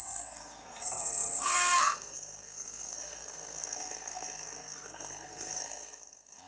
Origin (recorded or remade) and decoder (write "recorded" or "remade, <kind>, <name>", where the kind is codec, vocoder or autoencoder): remade, codec, SNAC